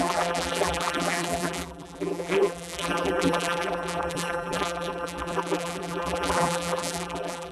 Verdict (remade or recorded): remade